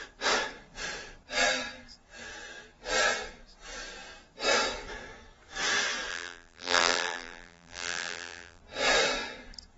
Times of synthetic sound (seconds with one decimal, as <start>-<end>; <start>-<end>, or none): 6.1-8.6

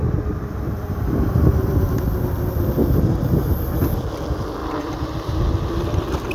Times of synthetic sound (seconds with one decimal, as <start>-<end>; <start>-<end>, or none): 0.0-1.8; 2.8-3.7; 4.6-5.4

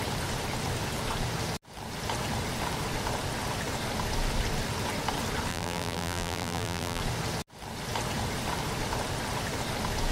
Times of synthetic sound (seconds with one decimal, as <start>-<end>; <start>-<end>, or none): 5.5-7.0

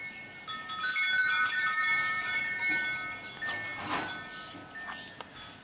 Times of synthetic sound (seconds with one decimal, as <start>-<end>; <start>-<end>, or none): 1.2-2.4

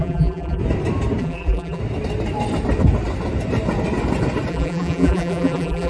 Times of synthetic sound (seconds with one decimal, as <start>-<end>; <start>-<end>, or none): 0.0-0.6; 1.2-1.8; 4.5-5.9